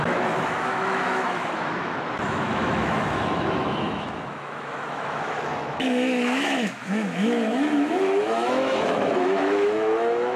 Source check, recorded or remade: remade